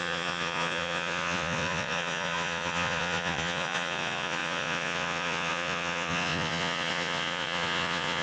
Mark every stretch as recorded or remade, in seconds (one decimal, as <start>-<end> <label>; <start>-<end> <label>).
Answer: 0.0-8.2 remade